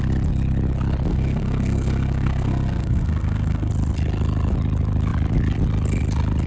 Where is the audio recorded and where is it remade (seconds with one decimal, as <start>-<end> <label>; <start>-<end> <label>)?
0.0-1.1 recorded; 1.1-3.7 remade; 3.7-6.5 recorded